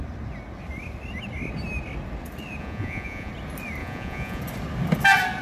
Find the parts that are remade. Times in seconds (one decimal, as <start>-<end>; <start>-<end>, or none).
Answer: 2.6-3.3; 3.8-4.4